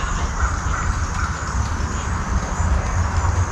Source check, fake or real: real